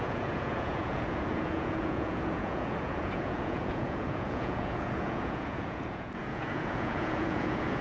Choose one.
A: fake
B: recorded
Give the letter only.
A